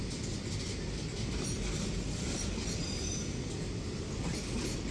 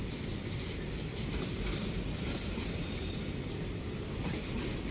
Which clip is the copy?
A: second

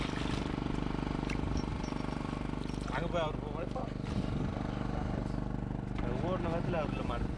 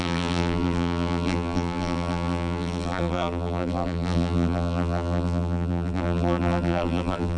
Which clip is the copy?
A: second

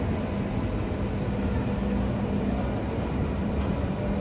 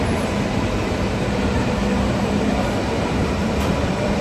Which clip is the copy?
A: second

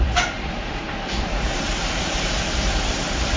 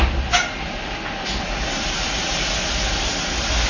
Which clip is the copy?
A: first